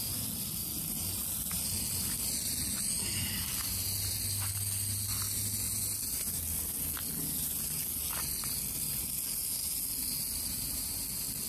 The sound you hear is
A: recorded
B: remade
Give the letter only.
A